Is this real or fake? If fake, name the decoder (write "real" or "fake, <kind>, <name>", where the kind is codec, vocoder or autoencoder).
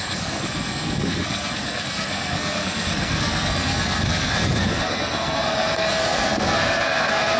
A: fake, codec, SNAC